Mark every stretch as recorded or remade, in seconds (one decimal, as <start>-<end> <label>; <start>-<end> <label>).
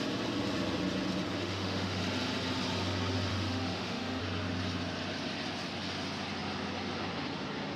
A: 0.0-1.4 recorded; 1.4-2.0 remade; 2.0-3.3 recorded; 3.3-4.2 remade; 4.2-7.8 recorded